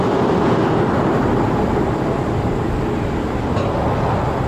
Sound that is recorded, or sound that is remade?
recorded